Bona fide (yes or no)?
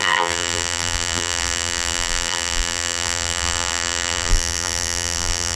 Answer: no